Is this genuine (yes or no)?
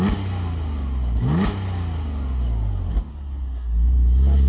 yes